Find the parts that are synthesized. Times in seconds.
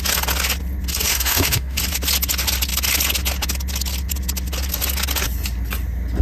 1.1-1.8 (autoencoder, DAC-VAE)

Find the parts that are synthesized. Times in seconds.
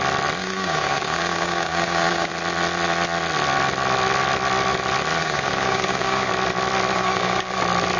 0.4-2.3 (codec, DAC); 5.2-6.3; 6.9-7.6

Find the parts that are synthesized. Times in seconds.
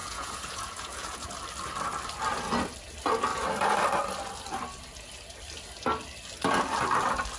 0.0-1.3 (vocoder, Vocos)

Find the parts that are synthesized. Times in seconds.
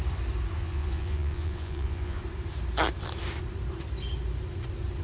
0.6-2.2 (vocoder, Vocos)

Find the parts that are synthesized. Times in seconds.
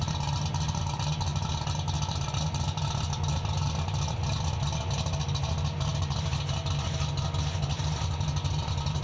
none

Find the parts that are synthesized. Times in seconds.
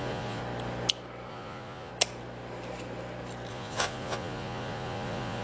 0.0-0.4 (vocoder, Vocos); 1.3-1.9; 3.5-5.4